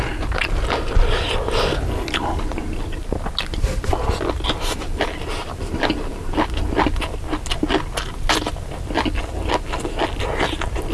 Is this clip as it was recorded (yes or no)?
yes